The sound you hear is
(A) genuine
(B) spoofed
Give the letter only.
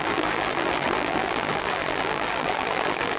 B